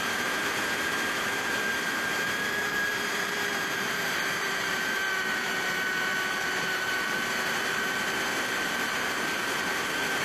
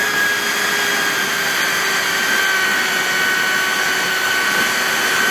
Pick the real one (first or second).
second